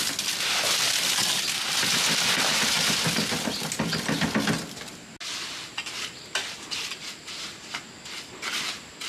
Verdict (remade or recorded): recorded